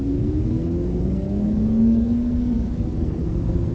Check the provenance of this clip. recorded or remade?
remade